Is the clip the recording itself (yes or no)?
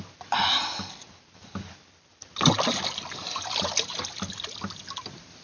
yes